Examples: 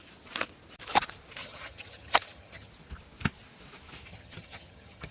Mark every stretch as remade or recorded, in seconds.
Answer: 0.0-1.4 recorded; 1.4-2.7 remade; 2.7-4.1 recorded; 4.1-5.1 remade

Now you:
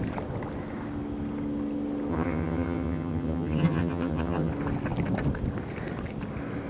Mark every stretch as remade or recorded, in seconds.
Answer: 0.0-2.1 recorded; 2.1-4.5 remade; 4.5-6.7 recorded

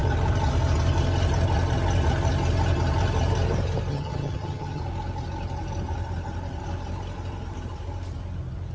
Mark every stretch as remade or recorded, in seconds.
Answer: 0.0-3.9 recorded; 3.9-4.8 remade; 4.8-8.7 recorded

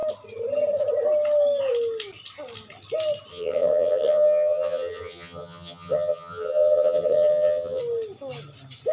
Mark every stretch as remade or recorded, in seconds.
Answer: 0.0-3.3 recorded; 3.3-7.8 remade; 7.8-8.9 recorded

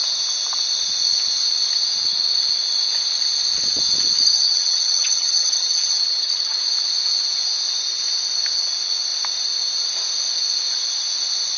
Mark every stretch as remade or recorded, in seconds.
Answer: 0.0-4.1 recorded; 4.1-6.6 remade; 6.6-11.6 recorded

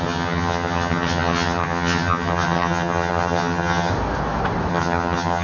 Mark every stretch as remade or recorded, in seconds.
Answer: 0.0-3.9 remade; 3.9-4.7 recorded; 4.7-5.4 remade

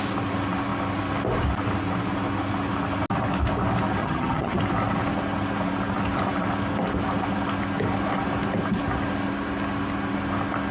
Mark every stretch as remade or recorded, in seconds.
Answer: 0.0-4.0 recorded; 4.0-4.6 remade; 4.6-10.7 recorded

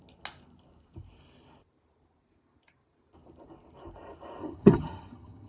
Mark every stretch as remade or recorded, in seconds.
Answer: 0.0-4.4 recorded; 4.4-5.5 remade